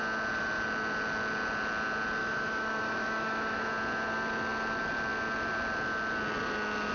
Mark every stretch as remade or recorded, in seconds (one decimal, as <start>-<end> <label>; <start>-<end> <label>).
0.0-2.2 recorded; 2.2-3.7 remade; 3.7-6.9 recorded